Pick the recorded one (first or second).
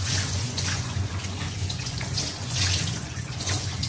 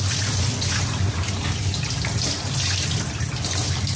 second